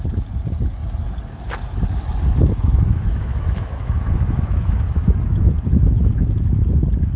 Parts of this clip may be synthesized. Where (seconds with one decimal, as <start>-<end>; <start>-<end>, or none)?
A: 2.3-6.6